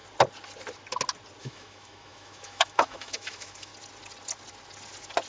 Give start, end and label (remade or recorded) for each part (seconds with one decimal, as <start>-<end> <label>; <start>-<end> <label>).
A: 0.0-1.4 recorded; 1.4-3.7 remade; 3.7-5.3 recorded